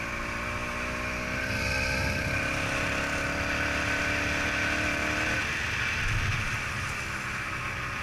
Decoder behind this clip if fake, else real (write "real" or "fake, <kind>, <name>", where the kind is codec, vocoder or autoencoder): real